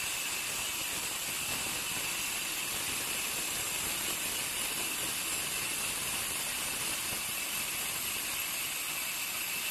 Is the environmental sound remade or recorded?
recorded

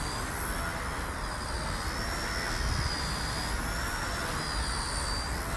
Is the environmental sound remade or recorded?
recorded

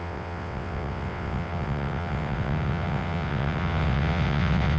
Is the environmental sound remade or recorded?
remade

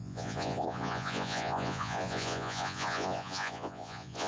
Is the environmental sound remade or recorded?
remade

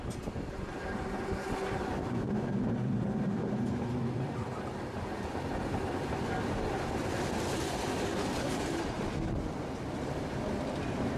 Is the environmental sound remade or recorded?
recorded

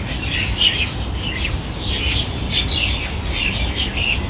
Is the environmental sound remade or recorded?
recorded